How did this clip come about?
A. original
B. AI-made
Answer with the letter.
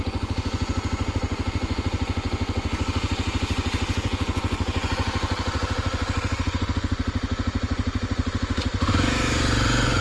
B